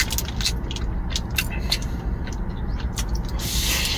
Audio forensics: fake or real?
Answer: real